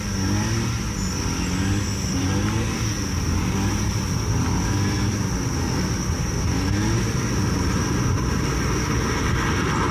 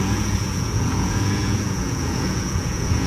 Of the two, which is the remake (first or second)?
second